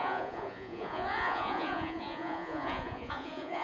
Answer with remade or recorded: remade